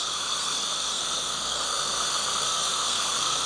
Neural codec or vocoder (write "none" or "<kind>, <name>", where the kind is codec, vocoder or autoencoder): codec, SNAC